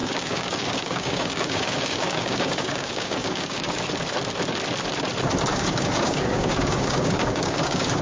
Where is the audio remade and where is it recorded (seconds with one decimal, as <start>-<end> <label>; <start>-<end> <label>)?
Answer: 0.0-3.8 remade; 3.8-5.5 recorded; 5.5-8.0 remade